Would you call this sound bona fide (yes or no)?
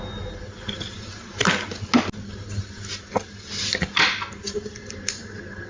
yes